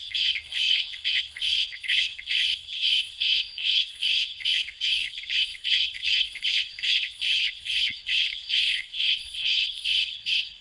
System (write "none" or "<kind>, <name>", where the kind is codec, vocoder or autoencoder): codec, HILCodec